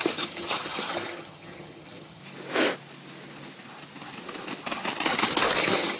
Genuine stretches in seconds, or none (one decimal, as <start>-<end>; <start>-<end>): 2.2-5.6